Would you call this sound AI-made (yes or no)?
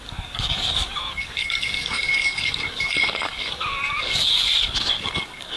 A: yes